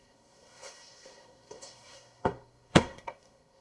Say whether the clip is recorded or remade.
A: remade